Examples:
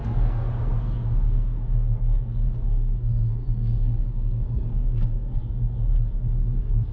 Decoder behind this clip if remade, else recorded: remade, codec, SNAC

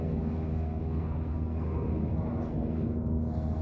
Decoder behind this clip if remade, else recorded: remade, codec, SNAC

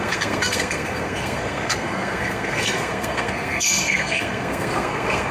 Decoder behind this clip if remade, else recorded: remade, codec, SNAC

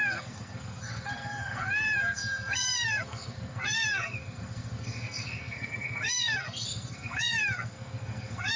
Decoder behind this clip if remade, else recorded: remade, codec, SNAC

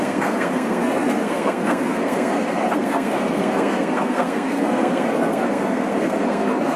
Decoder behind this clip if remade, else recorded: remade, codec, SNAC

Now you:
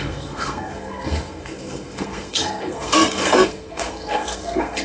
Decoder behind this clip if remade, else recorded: remade, codec, SNAC